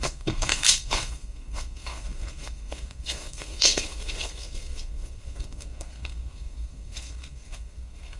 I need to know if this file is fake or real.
fake